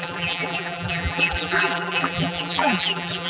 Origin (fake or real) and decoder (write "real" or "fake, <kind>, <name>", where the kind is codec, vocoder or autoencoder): fake, vocoder, BigVGAN v2